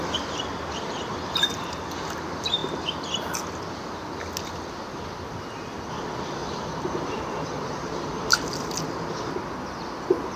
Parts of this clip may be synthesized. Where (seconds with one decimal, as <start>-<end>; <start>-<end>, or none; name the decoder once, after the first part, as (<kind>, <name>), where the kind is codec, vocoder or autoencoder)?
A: 6.4-8.1 (vocoder, BigVGAN v2)